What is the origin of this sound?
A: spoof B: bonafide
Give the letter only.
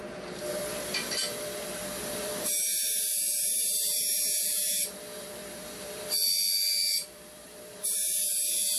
A